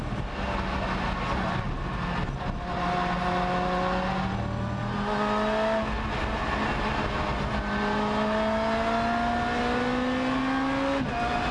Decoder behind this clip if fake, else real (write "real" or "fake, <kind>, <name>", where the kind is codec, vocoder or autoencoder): real